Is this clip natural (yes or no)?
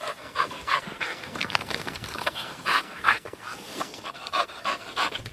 no